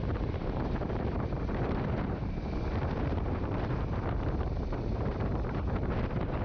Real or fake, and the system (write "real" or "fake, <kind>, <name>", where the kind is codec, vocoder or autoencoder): fake, vocoder, BigVGAN v2